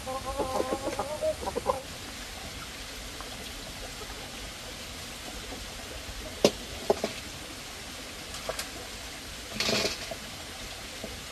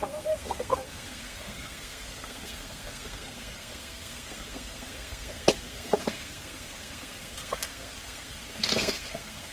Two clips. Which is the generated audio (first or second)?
second